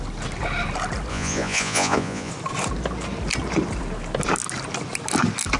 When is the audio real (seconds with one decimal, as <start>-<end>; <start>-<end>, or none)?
0.0-1.1; 2.3-5.6